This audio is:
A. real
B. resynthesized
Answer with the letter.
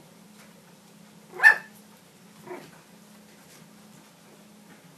A